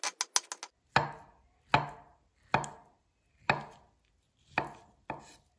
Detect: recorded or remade recorded